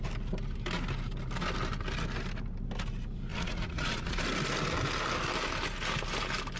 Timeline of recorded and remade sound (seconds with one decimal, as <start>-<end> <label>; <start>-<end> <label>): 0.0-3.3 recorded; 3.3-4.2 remade; 4.2-6.6 recorded